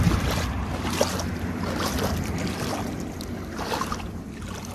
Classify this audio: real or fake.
real